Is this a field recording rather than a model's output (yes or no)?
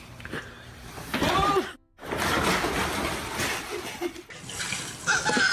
yes